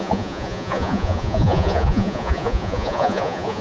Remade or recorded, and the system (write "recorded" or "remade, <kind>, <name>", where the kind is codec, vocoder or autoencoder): remade, vocoder, Vocos